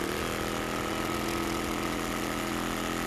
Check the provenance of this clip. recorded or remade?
recorded